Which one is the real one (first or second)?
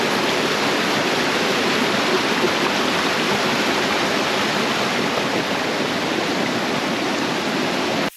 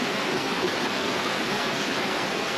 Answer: first